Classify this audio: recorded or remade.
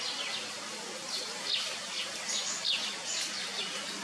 recorded